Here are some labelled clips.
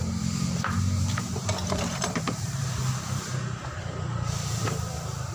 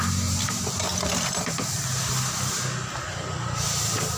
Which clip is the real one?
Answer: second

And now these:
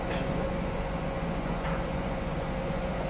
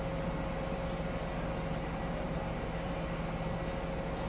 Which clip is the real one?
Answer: second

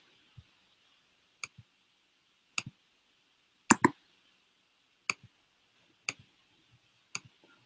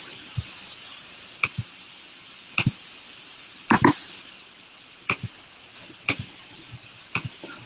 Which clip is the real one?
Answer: first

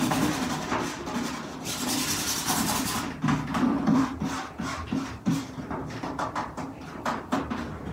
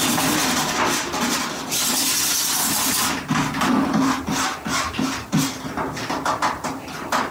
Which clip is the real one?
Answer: second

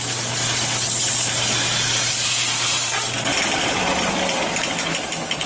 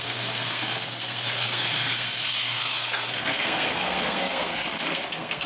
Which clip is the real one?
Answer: first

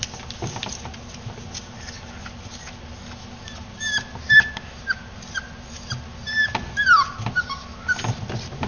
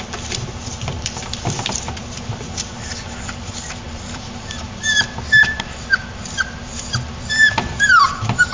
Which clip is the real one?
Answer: first